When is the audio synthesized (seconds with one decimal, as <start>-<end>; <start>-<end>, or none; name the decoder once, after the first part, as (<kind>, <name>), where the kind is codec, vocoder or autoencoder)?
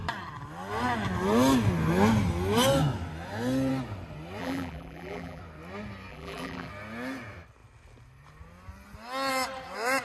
4.4-5.4 (vocoder, BigVGAN v2); 6.1-6.7